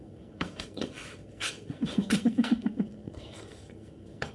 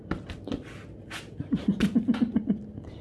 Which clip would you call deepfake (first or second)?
first